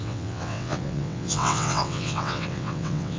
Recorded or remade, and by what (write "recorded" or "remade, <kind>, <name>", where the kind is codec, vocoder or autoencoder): remade, vocoder, WaveNeXt